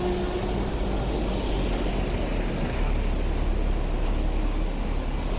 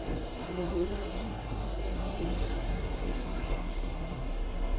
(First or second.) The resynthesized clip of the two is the second